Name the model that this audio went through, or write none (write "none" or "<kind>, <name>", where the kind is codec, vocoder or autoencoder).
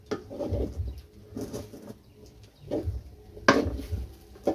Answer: none